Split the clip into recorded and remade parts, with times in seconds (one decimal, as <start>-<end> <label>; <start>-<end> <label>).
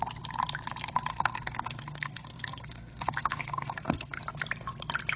0.0-1.1 recorded; 1.1-4.2 remade; 4.2-5.2 recorded